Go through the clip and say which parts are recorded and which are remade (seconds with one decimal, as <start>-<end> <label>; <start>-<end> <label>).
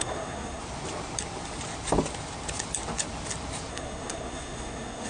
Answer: 0.0-0.6 remade; 0.6-3.7 recorded; 3.7-5.1 remade